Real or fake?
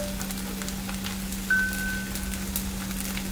real